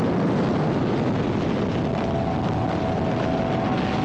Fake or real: real